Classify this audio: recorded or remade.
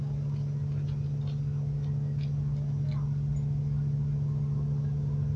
recorded